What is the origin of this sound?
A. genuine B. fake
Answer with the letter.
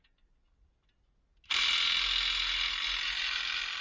A